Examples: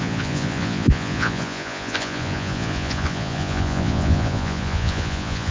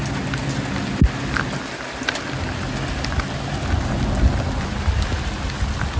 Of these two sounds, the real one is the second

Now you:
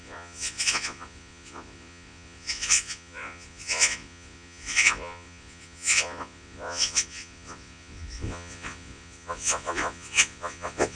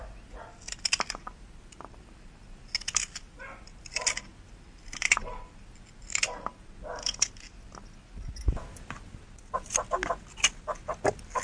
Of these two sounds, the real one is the second